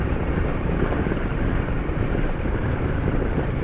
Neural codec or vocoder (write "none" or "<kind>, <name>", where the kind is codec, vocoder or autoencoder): vocoder, BigVGAN v2